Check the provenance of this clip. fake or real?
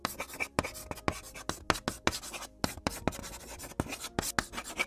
real